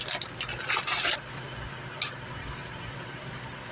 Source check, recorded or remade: recorded